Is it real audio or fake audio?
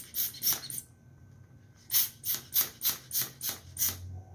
real